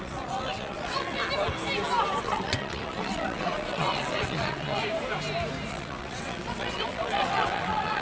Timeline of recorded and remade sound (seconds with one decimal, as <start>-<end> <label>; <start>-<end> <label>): 0.0-1.2 remade; 1.2-2.2 recorded; 2.2-4.8 remade; 4.8-5.7 recorded; 5.7-8.0 remade